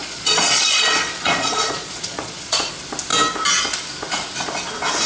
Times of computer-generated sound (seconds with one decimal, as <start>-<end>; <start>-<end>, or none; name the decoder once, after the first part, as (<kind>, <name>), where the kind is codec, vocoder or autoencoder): 0.0-2.7 (vocoder, Vocos)